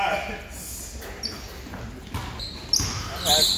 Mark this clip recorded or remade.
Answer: recorded